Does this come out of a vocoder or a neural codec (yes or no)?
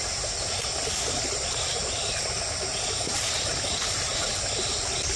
no